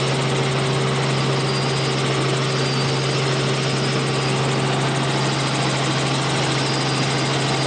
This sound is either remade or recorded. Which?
recorded